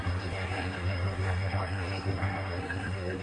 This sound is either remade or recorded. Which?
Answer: remade